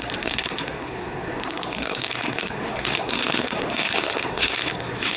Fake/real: fake